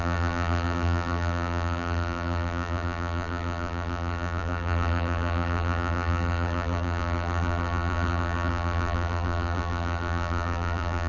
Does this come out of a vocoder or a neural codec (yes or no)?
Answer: yes